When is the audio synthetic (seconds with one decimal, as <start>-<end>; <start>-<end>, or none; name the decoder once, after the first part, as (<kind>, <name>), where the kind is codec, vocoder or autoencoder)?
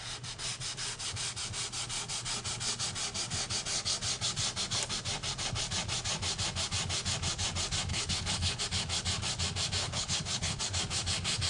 7.9-8.6 (codec, HILCodec); 9.8-10.6